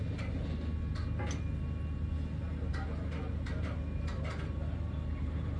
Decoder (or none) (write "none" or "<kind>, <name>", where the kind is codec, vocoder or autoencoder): none